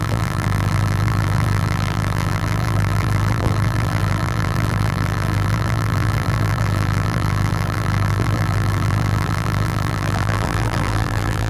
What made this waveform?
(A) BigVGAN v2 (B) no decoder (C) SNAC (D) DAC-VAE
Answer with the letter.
A